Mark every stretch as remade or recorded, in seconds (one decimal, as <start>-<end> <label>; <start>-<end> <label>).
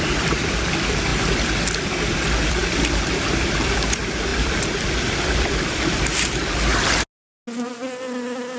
0.0-6.7 remade; 6.7-8.6 recorded